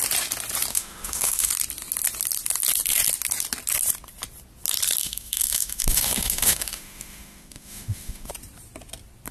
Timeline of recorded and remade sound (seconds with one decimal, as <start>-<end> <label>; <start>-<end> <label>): 0.0-0.7 recorded; 0.7-1.5 remade; 1.5-5.0 recorded; 5.0-8.3 remade; 8.3-9.3 recorded